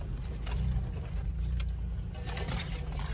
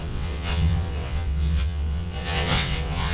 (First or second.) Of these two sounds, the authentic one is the first